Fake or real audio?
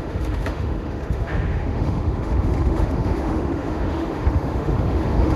fake